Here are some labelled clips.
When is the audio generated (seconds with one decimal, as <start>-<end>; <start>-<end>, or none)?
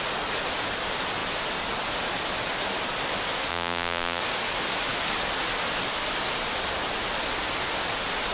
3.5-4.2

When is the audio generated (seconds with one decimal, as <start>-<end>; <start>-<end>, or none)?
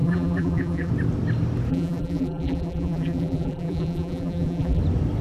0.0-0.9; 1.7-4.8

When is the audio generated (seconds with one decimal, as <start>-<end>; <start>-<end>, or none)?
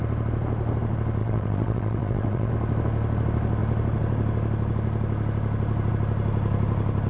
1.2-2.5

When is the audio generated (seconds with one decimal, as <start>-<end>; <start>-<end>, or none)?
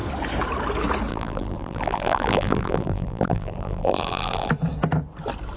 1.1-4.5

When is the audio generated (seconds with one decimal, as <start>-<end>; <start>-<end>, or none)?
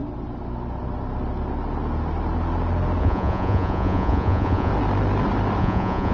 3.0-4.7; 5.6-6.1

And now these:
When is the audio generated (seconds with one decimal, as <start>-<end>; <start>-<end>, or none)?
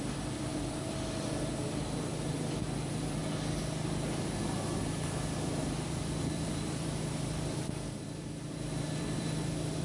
0.0-3.2; 4.8-5.6; 6.2-9.8